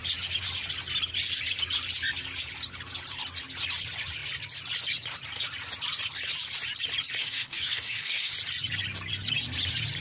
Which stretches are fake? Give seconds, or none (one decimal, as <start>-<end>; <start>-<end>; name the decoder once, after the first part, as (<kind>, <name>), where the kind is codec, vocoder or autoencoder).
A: 7.2-8.3 (codec, DAC)